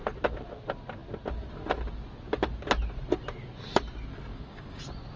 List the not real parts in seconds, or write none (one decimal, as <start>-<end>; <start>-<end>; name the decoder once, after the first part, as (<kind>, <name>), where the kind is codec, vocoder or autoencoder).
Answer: 4.3-4.8 (codec, DAC)